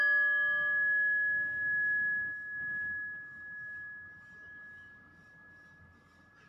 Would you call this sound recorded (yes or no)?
yes